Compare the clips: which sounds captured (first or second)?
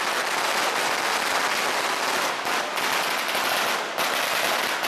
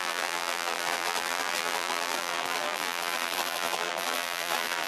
first